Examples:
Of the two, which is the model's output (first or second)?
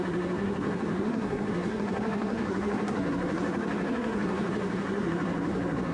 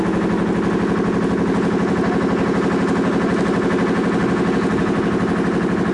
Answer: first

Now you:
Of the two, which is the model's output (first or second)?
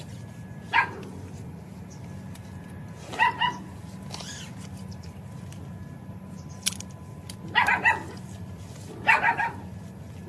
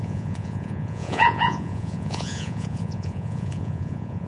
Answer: second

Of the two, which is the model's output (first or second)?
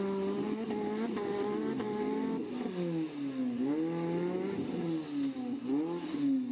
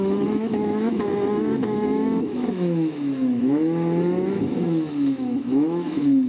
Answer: second